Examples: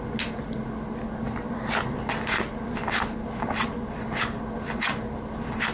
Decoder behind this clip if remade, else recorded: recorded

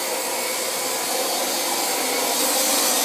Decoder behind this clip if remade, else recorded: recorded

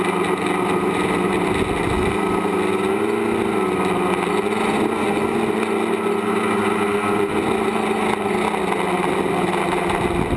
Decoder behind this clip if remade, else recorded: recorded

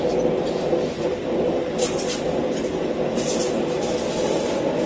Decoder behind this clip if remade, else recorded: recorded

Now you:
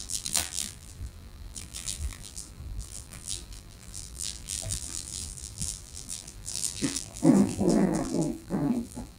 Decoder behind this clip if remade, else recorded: remade, vocoder, BigVGAN v2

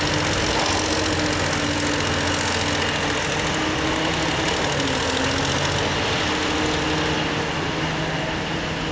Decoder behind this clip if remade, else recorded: recorded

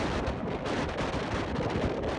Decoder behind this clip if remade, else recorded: remade, vocoder, BigVGAN v2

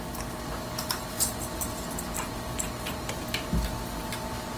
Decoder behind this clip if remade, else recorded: recorded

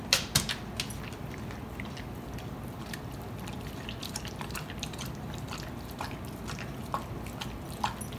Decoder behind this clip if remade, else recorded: recorded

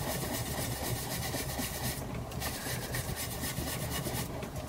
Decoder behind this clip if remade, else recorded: remade, vocoder, BigVGAN v2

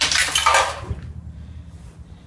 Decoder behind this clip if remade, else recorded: remade, vocoder, BigVGAN v2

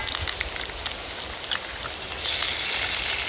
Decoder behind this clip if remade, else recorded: recorded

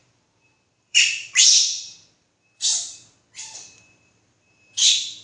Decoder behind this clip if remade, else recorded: remade, vocoder, BigVGAN v2